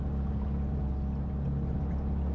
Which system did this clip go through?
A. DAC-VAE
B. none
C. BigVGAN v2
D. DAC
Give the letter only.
B